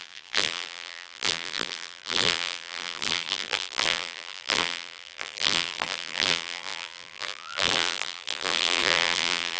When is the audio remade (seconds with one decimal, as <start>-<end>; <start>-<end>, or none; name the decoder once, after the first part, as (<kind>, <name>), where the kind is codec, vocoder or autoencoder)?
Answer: 0.0-9.6 (vocoder, BigVGAN v2)

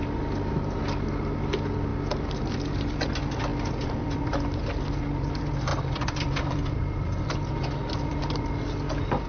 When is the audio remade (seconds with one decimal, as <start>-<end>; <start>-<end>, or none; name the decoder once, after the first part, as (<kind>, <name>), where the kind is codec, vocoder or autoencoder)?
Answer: 3.5-4.6 (vocoder, BigVGAN v2); 5.7-7.5